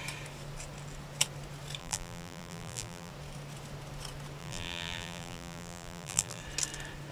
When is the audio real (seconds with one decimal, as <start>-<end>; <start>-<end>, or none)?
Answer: 0.0-1.8; 3.1-4.4; 6.4-7.1